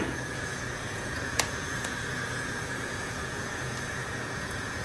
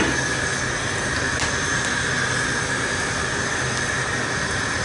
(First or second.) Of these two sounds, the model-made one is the first